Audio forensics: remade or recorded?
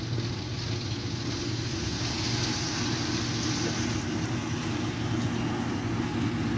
recorded